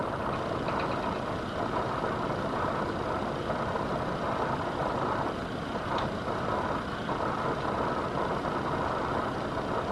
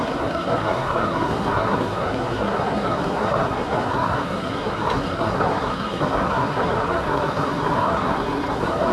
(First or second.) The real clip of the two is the first